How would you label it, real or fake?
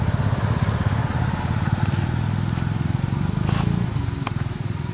real